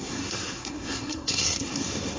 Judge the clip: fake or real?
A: fake